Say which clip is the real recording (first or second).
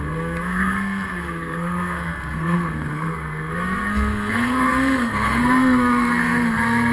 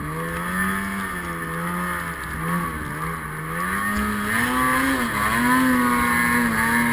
second